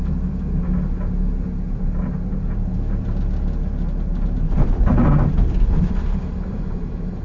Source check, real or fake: real